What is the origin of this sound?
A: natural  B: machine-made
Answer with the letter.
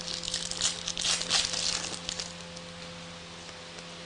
A